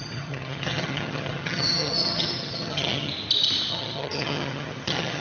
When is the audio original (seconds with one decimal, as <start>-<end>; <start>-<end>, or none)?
3.1-3.7